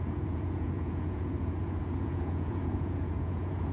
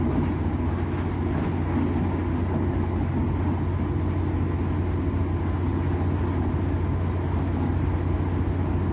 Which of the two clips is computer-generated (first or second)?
first